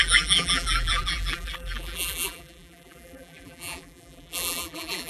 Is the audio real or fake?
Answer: fake